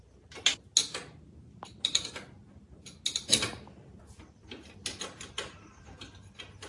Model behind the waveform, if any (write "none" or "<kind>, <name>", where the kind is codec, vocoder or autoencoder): none